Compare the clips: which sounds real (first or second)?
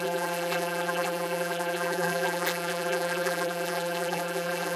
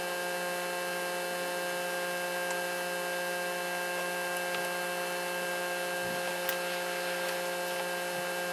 second